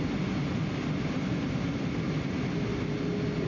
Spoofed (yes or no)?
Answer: no